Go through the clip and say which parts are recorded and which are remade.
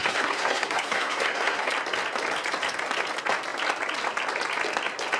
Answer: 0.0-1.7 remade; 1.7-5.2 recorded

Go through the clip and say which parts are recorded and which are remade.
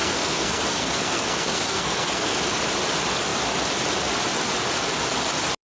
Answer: 0.0-2.4 remade; 2.4-5.8 recorded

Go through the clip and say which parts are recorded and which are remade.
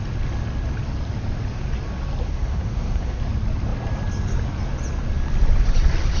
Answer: 0.0-2.3 recorded; 2.3-3.2 remade; 3.2-6.2 recorded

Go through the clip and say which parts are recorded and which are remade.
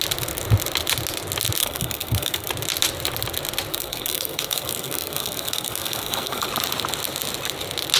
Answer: 0.0-1.6 recorded; 1.6-2.5 remade; 2.5-3.7 recorded; 3.7-6.5 remade; 6.5-8.0 recorded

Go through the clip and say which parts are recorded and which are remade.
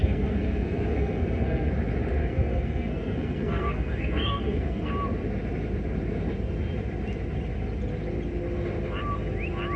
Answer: 0.0-1.7 remade; 1.7-2.2 recorded; 2.2-4.9 remade; 4.9-9.8 recorded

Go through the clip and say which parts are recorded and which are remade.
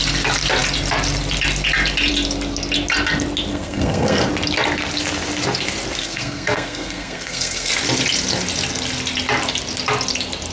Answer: 0.0-3.5 recorded; 3.5-4.3 remade; 4.3-6.0 recorded; 6.0-7.7 remade; 7.7-10.5 recorded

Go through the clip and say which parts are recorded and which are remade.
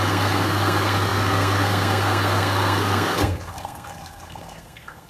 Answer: 0.0-5.1 remade